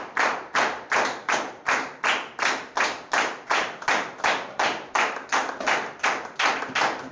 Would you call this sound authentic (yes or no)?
yes